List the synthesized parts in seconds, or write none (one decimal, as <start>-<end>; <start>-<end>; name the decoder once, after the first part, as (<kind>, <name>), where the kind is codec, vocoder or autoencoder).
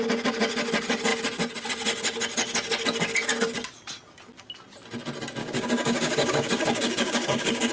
5.4-7.7 (codec, DAC)